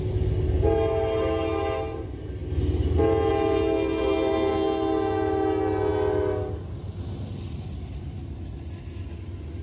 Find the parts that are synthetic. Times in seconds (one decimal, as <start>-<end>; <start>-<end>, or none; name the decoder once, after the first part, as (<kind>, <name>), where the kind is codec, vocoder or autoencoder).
none